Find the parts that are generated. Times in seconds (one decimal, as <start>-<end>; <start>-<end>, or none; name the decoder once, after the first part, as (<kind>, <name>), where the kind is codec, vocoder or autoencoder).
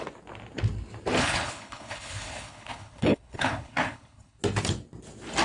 1.2-4.4 (codec, HILCodec)